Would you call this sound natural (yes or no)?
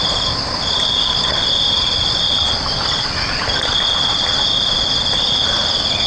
yes